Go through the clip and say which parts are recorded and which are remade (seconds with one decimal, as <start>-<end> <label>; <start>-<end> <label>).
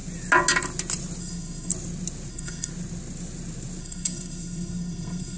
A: 0.0-1.2 recorded; 1.2-1.7 remade; 1.7-2.3 recorded; 2.3-2.7 remade; 2.7-3.8 recorded; 3.8-5.4 remade